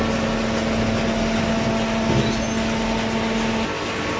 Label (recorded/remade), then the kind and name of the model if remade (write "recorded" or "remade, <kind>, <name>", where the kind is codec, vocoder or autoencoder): recorded